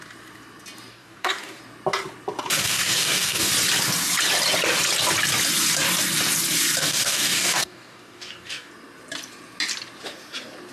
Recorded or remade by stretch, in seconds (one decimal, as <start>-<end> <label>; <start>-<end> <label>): 0.0-0.9 recorded; 0.9-1.6 remade; 1.6-2.5 recorded; 2.5-3.5 remade; 3.5-6.8 recorded; 6.8-8.7 remade; 8.7-10.7 recorded